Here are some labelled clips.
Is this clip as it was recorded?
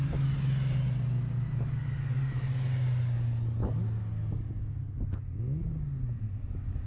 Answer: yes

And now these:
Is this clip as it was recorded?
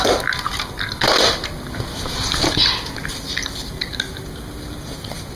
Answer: yes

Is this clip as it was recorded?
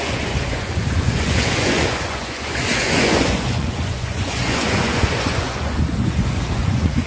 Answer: no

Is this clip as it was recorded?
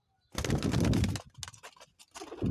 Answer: yes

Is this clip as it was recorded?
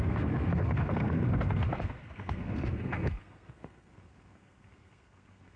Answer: no